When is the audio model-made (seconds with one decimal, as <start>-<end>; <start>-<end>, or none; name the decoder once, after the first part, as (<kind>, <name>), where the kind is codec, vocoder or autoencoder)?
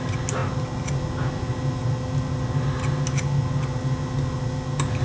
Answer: none